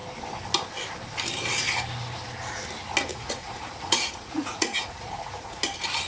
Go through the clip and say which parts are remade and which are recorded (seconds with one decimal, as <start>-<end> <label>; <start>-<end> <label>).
0.0-3.1 recorded; 3.1-5.6 remade; 5.6-6.1 recorded